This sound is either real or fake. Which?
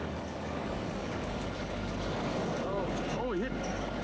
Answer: fake